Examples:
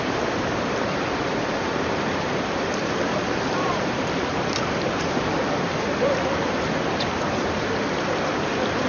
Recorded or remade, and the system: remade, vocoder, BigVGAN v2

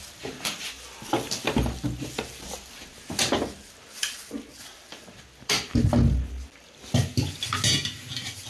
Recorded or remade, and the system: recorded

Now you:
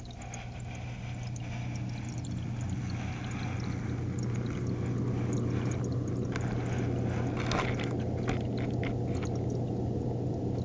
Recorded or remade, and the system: recorded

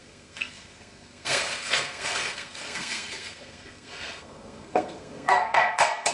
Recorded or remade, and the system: remade, codec, SNAC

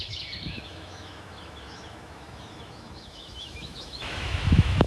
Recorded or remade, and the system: remade, autoencoder, DAC-VAE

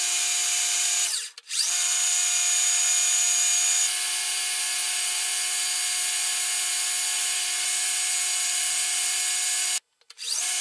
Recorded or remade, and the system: recorded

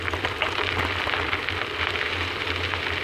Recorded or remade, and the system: recorded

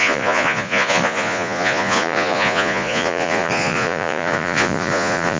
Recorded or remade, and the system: remade, vocoder, Vocos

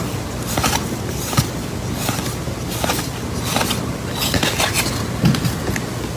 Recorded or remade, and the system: recorded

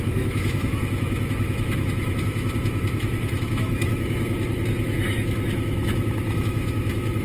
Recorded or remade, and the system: remade, autoencoder, DAC-VAE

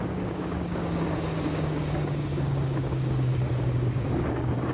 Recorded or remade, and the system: remade, codec, DAC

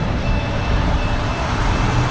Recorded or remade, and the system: remade, vocoder, BigVGAN v2